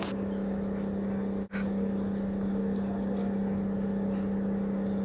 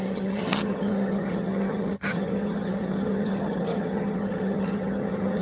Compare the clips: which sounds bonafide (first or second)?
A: first